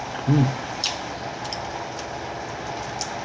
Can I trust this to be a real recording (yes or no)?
yes